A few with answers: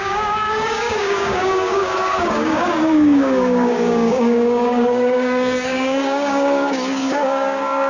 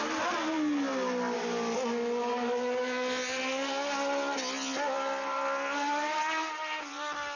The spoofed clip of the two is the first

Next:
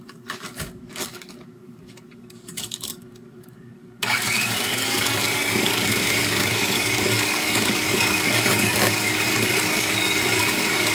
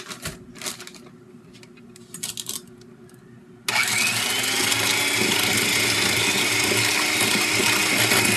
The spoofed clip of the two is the first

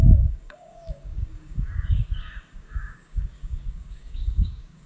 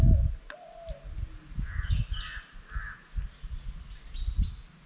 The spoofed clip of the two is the first